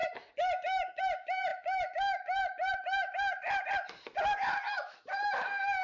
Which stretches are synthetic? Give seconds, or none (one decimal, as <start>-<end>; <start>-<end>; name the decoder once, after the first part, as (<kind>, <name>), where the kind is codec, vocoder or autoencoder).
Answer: 0.0-3.4 (autoencoder, DAC-VAE); 4.7-5.8